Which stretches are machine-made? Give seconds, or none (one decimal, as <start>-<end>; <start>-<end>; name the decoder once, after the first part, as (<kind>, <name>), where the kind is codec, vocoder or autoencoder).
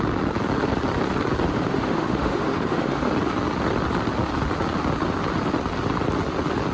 1.5-3.1 (autoencoder, DAC-VAE)